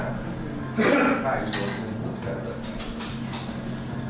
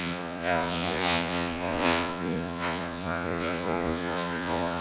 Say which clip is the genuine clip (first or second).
first